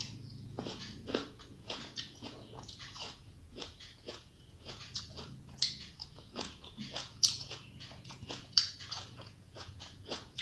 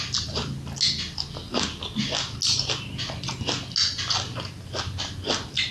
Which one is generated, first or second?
first